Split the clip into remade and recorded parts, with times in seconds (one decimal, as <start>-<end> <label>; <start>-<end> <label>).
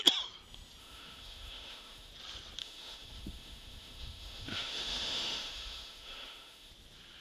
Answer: 0.0-0.8 recorded; 0.8-2.1 remade; 2.1-2.6 recorded; 2.6-6.7 remade; 6.7-7.2 recorded